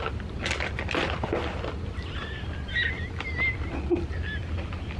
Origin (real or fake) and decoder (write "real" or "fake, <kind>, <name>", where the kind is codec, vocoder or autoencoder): real